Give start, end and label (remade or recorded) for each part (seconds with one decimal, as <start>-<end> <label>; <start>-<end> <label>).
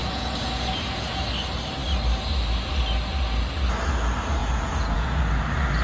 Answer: 0.0-1.2 remade; 1.2-4.4 recorded; 4.4-5.2 remade; 5.2-5.8 recorded